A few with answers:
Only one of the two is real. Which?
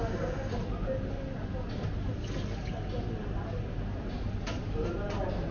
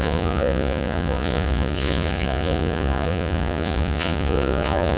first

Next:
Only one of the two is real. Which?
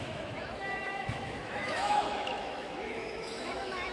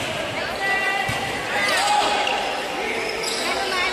second